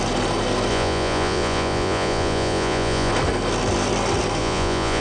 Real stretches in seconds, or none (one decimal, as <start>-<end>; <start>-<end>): 0.0-0.7; 3.1-4.4